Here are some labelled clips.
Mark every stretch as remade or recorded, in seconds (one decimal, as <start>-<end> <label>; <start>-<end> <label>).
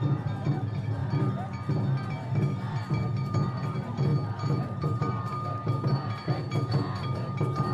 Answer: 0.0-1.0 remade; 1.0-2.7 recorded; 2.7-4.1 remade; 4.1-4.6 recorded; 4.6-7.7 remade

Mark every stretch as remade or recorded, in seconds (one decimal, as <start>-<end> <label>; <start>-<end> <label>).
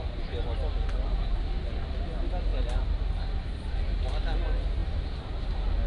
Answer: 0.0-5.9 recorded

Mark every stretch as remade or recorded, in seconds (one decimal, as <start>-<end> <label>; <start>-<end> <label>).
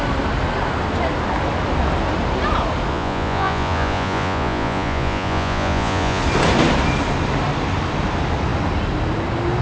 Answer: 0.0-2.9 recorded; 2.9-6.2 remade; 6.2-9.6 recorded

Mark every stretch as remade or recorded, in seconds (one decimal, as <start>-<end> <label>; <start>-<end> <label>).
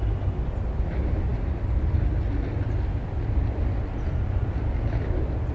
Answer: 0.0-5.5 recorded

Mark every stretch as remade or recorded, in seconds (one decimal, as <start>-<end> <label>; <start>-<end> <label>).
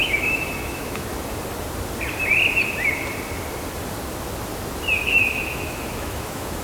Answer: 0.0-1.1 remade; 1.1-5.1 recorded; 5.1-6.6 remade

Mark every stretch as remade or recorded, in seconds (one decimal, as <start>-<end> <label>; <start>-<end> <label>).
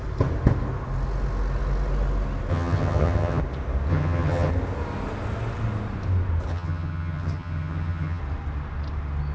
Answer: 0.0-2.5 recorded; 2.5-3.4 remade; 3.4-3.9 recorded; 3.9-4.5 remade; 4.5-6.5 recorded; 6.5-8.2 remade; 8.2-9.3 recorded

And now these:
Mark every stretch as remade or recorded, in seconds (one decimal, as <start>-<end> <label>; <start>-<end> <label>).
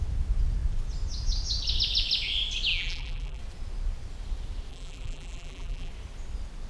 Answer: 0.0-2.7 recorded; 2.7-3.4 remade; 3.4-4.7 recorded; 4.7-5.9 remade; 5.9-6.7 recorded